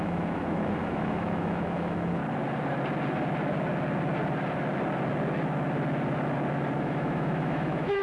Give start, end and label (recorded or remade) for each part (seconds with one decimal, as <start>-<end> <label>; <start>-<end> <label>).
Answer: 0.0-2.2 remade; 2.2-6.8 recorded; 6.8-8.0 remade